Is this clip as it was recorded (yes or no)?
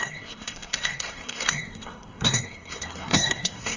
no